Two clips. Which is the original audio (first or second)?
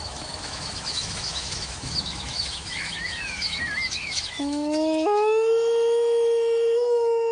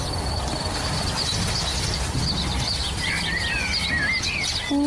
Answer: second